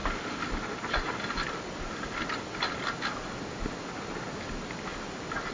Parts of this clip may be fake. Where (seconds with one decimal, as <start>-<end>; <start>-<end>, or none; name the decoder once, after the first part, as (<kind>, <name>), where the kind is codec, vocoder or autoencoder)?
none